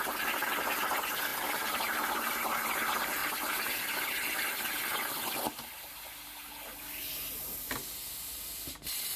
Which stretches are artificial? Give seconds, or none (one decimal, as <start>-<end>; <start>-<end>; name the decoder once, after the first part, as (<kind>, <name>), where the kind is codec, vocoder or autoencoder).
1.3-2.3 (vocoder, BigVGAN v2)